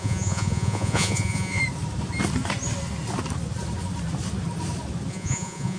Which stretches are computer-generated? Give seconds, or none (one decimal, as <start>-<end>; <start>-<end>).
0.0-1.6; 5.1-5.8